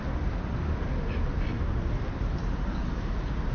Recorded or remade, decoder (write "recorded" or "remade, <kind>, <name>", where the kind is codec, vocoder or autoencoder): recorded